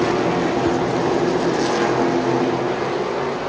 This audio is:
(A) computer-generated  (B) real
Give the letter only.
B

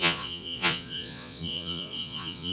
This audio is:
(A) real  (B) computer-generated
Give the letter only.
B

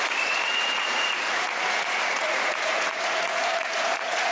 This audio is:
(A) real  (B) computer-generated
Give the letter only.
B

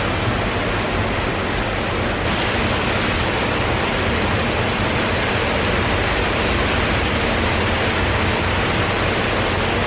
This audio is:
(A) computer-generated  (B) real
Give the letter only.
B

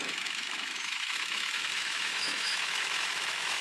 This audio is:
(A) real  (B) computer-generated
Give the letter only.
B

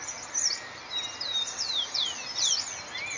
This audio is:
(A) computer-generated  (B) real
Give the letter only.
B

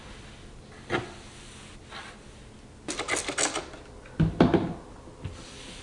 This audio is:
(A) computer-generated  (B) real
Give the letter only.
B